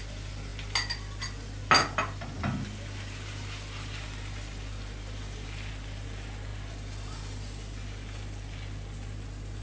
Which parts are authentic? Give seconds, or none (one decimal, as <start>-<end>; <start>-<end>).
0.0-9.6